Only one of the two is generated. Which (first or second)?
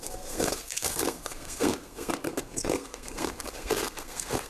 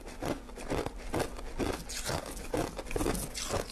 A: first